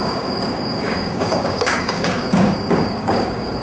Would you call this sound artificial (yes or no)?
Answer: yes